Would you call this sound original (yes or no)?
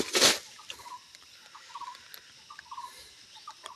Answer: yes